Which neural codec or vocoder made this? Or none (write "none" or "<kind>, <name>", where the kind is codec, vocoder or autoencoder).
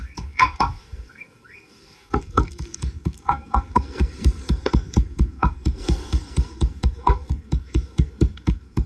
codec, SNAC